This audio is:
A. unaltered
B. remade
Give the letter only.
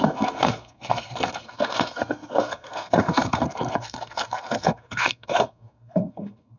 B